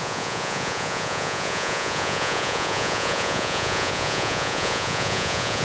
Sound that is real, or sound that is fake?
fake